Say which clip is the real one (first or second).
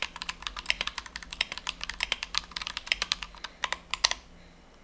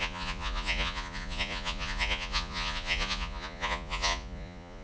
first